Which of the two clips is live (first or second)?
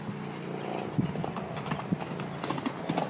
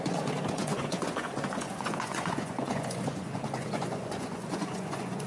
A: first